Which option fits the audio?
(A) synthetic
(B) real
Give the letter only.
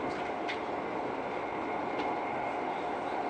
B